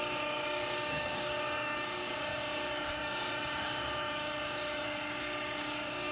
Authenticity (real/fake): fake